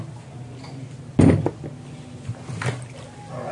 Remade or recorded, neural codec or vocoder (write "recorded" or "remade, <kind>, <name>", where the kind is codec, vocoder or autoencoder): recorded